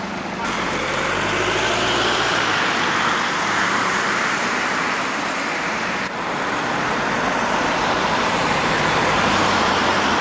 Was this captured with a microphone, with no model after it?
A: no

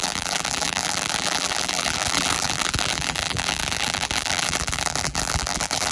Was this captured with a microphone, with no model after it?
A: no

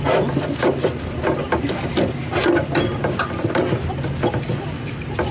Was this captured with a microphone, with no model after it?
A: no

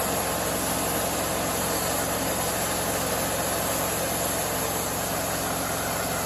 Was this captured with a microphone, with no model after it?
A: yes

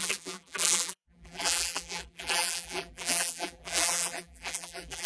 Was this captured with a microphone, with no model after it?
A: no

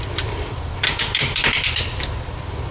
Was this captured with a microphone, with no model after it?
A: no